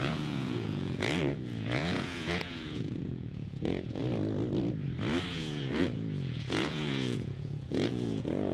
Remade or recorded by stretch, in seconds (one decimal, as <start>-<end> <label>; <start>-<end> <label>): 0.0-4.0 remade; 4.0-5.3 recorded; 5.3-8.5 remade

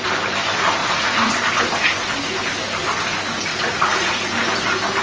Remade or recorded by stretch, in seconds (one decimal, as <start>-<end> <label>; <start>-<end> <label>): 0.0-0.8 recorded; 0.8-1.3 remade; 1.3-3.5 recorded; 3.5-4.1 remade; 4.1-5.0 recorded

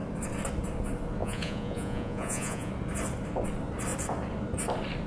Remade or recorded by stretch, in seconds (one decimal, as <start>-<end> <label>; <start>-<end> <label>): 0.0-1.2 recorded; 1.2-2.7 remade; 2.7-5.1 recorded

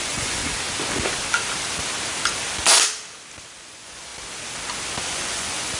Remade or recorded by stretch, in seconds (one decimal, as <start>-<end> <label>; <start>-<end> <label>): 0.0-0.4 remade; 0.4-3.6 recorded; 3.6-4.1 remade; 4.1-5.1 recorded; 5.1-5.8 remade

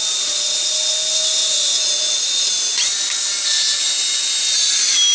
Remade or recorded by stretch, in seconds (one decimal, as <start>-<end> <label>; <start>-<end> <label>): 0.0-5.1 recorded

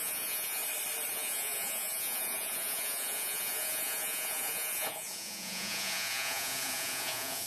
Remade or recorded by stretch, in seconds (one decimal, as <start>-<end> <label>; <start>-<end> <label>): 0.0-0.6 remade; 0.6-1.1 recorded; 1.1-7.5 remade

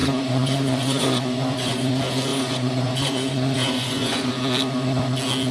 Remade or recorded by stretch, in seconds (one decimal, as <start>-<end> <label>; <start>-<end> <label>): 0.0-1.9 remade; 1.9-2.3 recorded; 2.3-4.3 remade; 4.3-5.5 recorded